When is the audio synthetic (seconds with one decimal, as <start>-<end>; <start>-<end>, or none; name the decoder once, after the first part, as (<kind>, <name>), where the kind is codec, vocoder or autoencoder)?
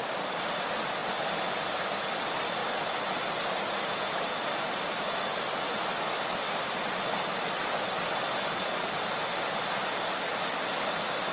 none